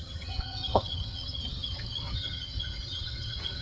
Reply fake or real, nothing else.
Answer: fake